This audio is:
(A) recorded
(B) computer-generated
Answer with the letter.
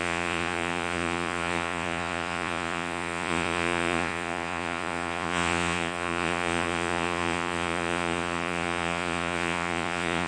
B